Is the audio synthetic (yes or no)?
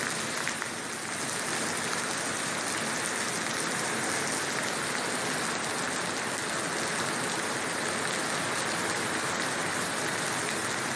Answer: no